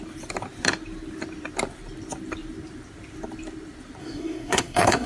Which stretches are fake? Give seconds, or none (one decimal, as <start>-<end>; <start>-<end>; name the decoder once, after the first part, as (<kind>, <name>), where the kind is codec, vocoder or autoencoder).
4.0-5.1 (codec, SNAC)